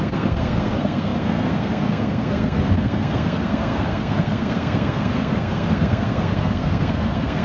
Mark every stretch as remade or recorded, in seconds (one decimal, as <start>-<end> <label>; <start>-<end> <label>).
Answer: 0.0-7.4 remade

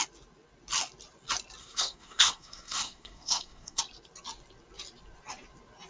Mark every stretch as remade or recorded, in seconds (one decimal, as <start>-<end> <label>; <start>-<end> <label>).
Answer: 0.0-1.6 recorded; 1.6-3.8 remade; 3.8-5.9 recorded